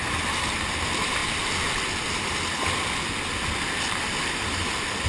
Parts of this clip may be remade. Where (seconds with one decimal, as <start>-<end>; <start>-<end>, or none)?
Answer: none